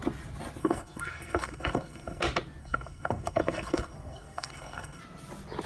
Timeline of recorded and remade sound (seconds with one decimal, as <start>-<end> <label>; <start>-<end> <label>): 0.0-0.6 recorded; 0.6-2.2 remade; 2.2-2.6 recorded; 2.6-5.0 remade; 5.0-5.7 recorded